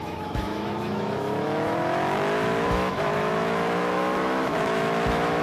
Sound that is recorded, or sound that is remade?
remade